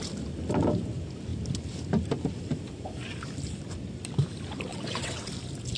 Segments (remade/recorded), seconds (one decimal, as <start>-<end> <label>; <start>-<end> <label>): 0.0-4.7 recorded; 4.7-5.3 remade; 5.3-5.8 recorded

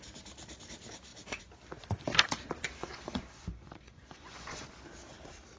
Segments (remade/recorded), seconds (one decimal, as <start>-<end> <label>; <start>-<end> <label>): 0.0-2.8 recorded; 2.8-4.7 remade; 4.7-5.6 recorded

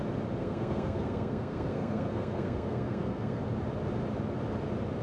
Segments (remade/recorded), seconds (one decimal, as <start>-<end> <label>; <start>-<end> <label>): 0.0-0.4 recorded; 0.4-3.4 remade; 3.4-5.0 recorded

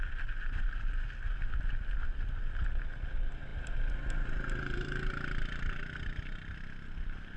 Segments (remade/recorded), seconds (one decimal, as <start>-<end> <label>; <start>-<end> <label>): 0.0-3.5 recorded; 3.5-5.1 remade; 5.1-7.4 recorded

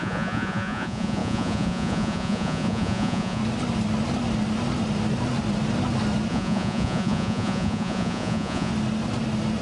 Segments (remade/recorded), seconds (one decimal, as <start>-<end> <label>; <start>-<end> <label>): 0.0-3.4 remade; 3.4-6.3 recorded; 6.3-8.7 remade; 8.7-9.6 recorded

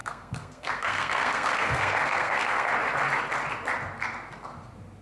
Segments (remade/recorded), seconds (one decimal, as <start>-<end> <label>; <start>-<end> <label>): 0.0-2.7 remade; 2.7-5.0 recorded

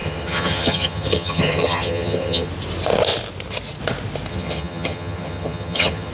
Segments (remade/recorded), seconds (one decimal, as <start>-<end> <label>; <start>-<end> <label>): 0.0-2.5 remade; 2.5-4.3 recorded; 4.3-6.1 remade

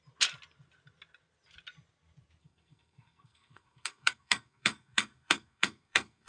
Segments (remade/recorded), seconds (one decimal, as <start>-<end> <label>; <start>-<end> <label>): 0.0-2.4 recorded; 2.4-6.3 remade